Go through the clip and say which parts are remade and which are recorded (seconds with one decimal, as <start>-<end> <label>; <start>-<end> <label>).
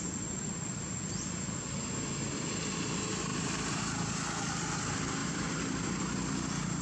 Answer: 0.0-3.3 recorded; 3.3-3.8 remade; 3.8-5.2 recorded; 5.2-6.2 remade; 6.2-6.8 recorded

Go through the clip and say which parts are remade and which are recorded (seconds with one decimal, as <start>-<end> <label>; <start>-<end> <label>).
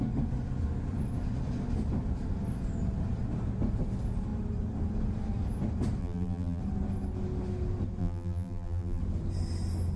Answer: 0.0-6.0 recorded; 6.0-6.6 remade; 6.6-8.0 recorded; 8.0-9.0 remade; 9.0-10.0 recorded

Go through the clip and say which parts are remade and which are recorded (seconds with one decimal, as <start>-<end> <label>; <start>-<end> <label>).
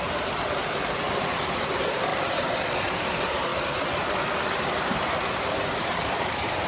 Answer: 0.0-0.6 remade; 0.6-1.2 recorded; 1.2-2.1 remade; 2.1-2.9 recorded; 2.9-3.5 remade; 3.5-4.8 recorded; 4.8-6.7 remade